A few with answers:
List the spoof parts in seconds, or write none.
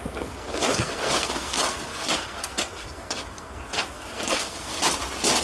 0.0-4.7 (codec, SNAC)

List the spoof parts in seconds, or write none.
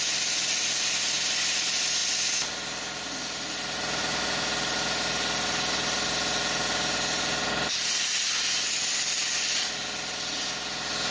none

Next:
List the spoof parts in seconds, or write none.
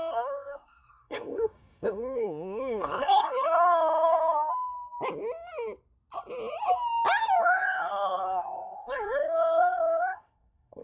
0.0-4.5 (codec, SNAC); 7.4-10.8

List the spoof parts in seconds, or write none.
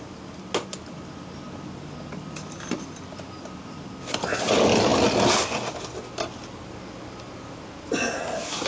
none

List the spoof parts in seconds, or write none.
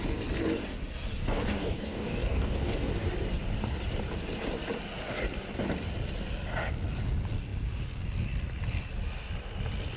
1.2-2.9 (codec, DAC)